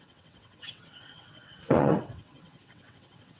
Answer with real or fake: fake